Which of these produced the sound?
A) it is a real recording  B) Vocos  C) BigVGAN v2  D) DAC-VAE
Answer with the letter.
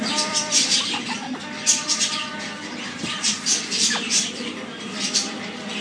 C